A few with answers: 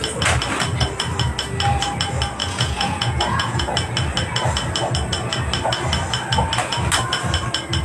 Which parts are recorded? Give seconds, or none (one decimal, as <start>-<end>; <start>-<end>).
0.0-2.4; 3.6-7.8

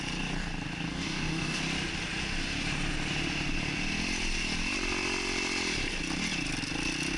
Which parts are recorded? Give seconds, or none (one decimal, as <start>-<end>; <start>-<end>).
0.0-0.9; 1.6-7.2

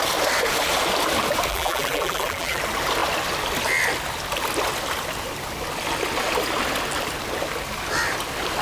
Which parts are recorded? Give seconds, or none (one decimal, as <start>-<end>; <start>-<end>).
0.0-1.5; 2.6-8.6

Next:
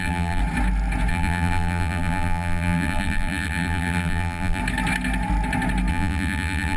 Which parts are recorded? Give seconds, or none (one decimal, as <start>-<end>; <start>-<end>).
0.4-1.1; 4.6-5.9

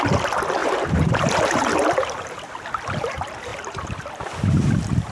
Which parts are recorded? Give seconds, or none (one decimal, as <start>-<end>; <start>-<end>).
0.0-0.6; 2.5-5.1

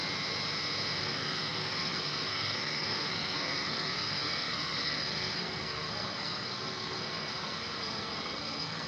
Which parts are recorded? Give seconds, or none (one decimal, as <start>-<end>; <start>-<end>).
0.0-1.0